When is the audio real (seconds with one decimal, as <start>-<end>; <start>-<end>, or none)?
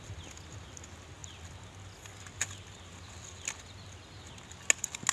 0.0-5.1